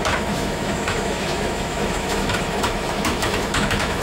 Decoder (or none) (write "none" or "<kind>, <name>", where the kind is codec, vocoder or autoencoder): autoencoder, DAC-VAE